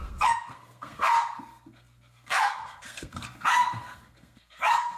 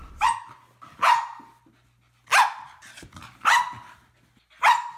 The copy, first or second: first